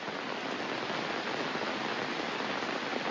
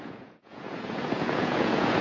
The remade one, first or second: second